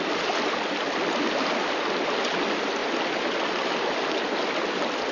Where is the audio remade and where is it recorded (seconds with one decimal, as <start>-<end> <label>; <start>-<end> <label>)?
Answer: 0.0-5.1 recorded